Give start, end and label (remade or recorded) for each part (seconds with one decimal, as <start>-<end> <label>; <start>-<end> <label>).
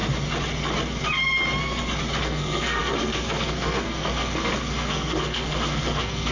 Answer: 0.0-2.2 recorded; 2.2-6.3 remade